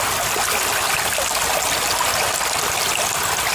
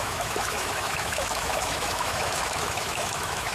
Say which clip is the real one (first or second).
first